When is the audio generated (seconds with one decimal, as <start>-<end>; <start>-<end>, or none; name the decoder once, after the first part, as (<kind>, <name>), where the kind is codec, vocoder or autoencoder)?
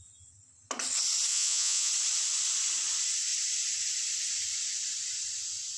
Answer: 1.3-1.9 (vocoder, Vocos)